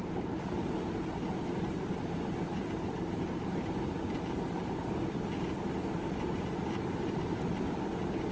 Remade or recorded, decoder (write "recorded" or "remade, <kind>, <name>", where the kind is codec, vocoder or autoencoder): recorded